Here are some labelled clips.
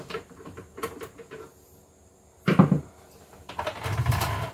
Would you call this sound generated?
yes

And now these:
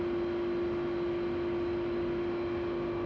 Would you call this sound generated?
no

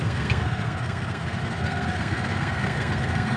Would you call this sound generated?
yes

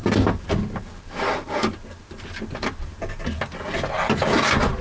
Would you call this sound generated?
no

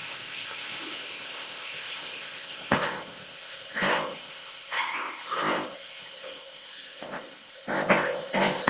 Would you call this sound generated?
yes